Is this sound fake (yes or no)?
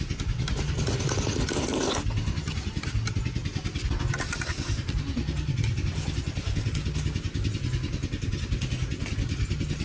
no